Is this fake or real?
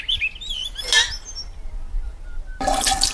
real